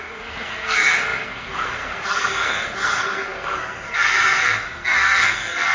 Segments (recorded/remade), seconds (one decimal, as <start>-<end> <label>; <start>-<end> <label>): 0.0-5.7 remade